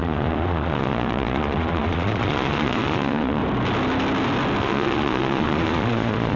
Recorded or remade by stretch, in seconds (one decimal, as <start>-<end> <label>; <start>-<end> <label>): 0.0-3.4 remade; 3.4-4.6 recorded; 4.6-6.4 remade

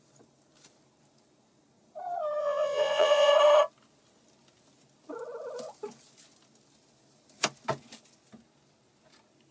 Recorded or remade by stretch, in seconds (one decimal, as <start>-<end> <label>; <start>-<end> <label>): 0.0-2.4 recorded; 2.4-3.3 remade; 3.3-9.5 recorded

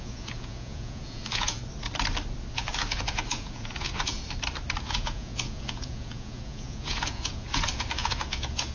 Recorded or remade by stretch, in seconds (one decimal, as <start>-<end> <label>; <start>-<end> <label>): 0.0-1.6 remade; 1.6-2.5 recorded; 2.5-4.2 remade; 4.2-4.8 recorded; 4.8-8.7 remade

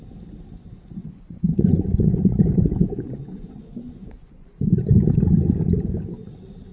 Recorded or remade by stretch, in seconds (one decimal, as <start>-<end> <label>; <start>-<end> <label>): 0.0-1.0 recorded; 1.0-4.5 remade; 4.5-6.7 recorded